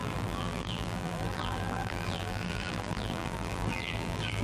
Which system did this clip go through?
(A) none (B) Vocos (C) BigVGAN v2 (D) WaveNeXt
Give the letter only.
C